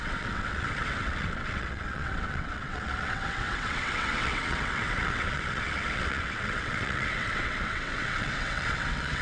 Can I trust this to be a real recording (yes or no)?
no